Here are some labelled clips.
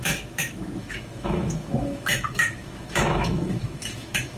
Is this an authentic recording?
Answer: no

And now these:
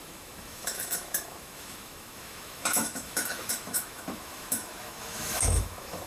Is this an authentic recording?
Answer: no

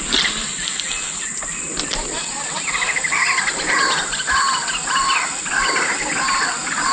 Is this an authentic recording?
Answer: yes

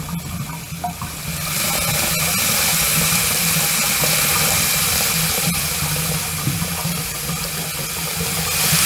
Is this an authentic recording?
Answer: yes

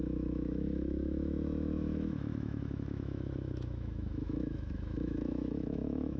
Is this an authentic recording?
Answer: no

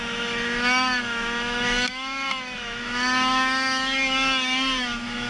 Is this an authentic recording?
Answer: no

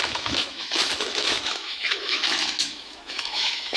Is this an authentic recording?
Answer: no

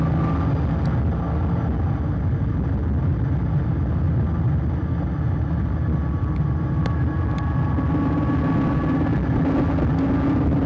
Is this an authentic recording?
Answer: yes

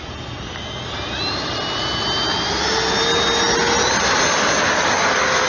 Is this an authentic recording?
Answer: yes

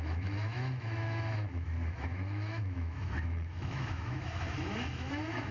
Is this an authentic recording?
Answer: no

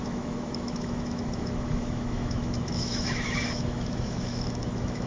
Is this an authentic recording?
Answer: no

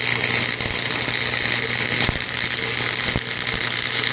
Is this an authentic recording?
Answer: yes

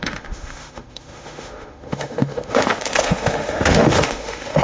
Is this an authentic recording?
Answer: no